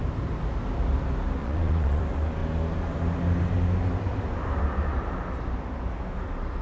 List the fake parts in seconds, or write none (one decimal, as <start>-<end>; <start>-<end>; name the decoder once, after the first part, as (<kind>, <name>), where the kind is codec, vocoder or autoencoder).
1.4-2.0 (vocoder, Vocos)